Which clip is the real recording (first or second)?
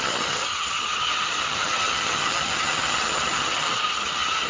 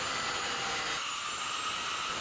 second